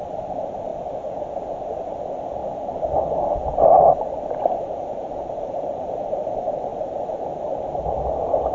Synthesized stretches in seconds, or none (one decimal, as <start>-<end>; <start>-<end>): 0.0-2.4; 5.4-6.7; 8.0-8.5